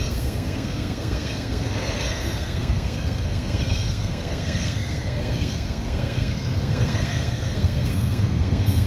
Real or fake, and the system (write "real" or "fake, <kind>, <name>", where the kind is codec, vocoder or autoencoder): fake, codec, SNAC